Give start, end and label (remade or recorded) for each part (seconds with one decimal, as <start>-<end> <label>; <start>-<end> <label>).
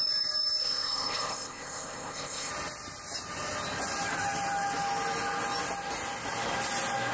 0.0-0.6 recorded; 0.6-2.5 remade; 2.5-7.1 recorded